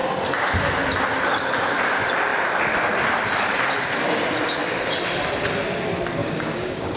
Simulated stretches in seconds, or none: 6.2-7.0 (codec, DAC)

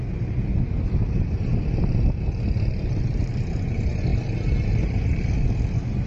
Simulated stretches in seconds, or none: none

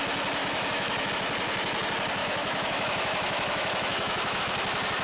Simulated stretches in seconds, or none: 0.4-1.1 (autoencoder, DAC-VAE); 2.2-4.4

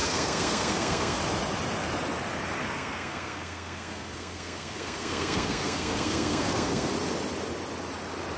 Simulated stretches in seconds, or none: 0.0-1.2 (codec, SNAC); 2.6-6.9

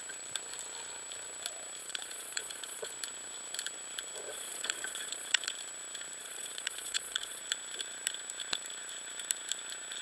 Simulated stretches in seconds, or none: 1.8-2.9 (vocoder, Vocos); 4.3-5.5; 6.2-7.4

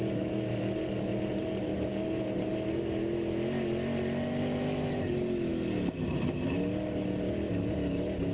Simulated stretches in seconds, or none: none

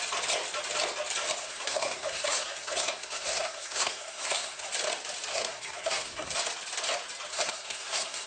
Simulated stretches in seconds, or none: 1.4-4.7 (codec, SNAC); 5.3-6.3; 7.3-8.3

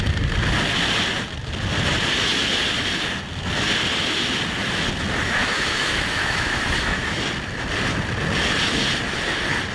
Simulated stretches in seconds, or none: 5.4-7.2 (autoencoder, DAC-VAE)